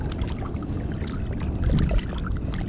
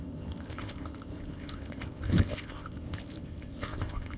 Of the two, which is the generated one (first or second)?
second